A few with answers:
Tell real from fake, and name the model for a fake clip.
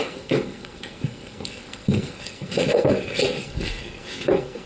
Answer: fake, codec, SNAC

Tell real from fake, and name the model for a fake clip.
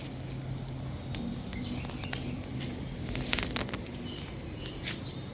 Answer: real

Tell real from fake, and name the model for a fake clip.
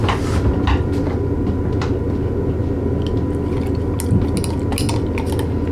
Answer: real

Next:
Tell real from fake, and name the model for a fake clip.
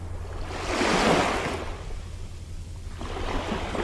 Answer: real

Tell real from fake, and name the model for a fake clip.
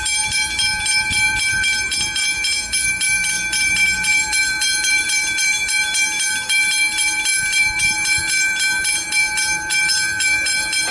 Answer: fake, vocoder, BigVGAN v2